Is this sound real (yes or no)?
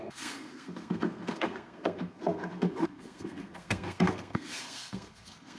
no